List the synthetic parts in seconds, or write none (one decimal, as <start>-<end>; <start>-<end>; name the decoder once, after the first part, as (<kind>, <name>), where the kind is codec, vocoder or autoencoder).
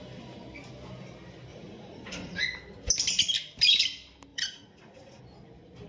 1.5-2.4 (vocoder, Vocos); 4.3-5.2